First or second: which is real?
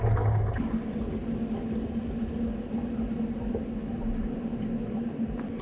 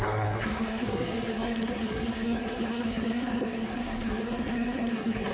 first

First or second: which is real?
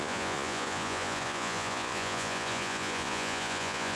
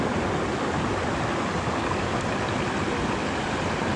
second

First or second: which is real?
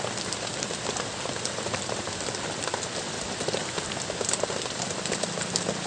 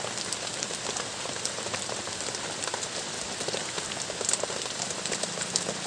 second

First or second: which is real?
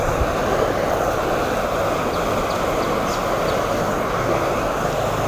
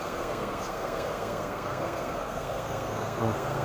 first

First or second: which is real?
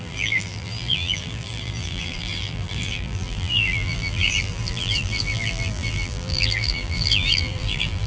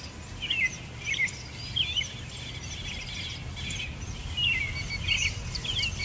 second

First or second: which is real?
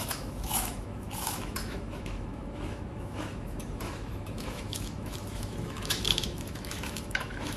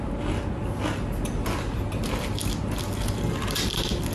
second